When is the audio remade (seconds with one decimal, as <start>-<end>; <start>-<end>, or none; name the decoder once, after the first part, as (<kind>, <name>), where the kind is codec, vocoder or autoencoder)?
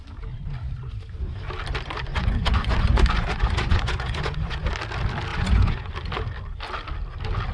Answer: 2.1-4.7 (vocoder, Vocos); 5.3-5.9